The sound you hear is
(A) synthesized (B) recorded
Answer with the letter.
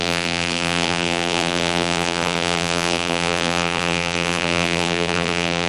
A